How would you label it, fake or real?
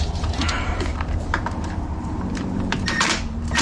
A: fake